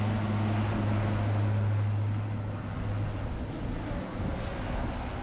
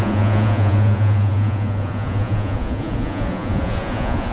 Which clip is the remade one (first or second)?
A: second